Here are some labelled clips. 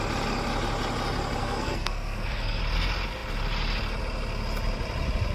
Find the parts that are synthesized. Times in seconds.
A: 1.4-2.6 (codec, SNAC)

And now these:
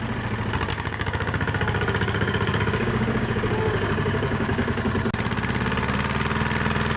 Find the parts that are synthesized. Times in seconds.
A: 0.7-4.8 (codec, DAC)

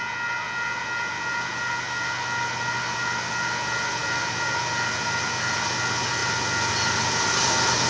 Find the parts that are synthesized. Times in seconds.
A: none